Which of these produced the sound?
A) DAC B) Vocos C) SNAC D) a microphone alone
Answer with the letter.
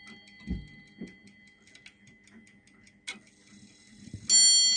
D